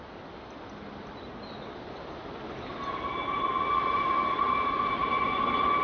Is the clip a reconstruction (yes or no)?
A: no